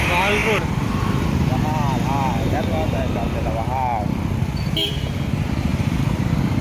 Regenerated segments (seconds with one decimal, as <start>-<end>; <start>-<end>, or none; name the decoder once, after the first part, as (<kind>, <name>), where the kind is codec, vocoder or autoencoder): 5.7-6.6 (vocoder, BigVGAN v2)

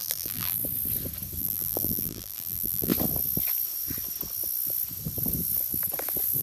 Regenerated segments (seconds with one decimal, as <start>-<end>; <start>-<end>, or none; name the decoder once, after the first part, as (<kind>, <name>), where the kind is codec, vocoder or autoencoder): 0.0-0.6 (vocoder, BigVGAN v2); 1.4-2.9